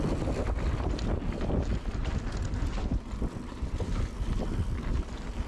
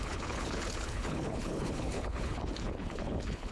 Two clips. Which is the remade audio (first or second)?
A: second